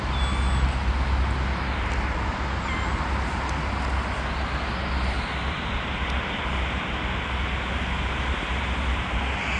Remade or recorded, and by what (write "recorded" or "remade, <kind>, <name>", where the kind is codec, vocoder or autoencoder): recorded